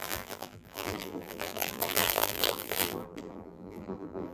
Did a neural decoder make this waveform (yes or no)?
yes